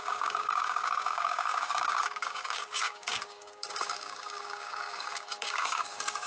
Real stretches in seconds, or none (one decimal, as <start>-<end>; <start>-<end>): none